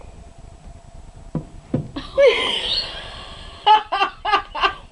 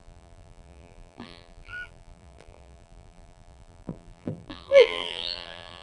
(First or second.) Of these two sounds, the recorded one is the first